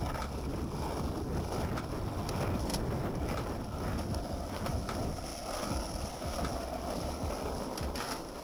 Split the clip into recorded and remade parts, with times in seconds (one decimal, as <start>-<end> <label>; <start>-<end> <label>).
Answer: 0.0-8.4 recorded